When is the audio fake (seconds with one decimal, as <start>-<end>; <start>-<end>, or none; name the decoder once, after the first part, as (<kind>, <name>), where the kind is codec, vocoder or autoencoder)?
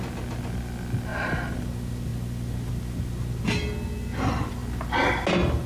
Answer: 1.1-1.6 (vocoder, BigVGAN v2)